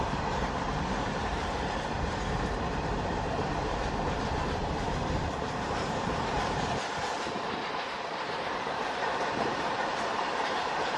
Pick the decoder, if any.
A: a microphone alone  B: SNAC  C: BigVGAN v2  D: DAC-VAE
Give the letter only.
C